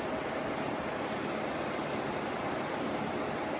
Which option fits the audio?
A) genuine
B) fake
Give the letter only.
A